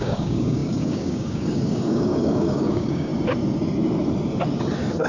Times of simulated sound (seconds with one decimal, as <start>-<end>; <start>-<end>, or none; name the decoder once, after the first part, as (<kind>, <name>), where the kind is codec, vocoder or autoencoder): 0.0-3.1 (codec, DAC)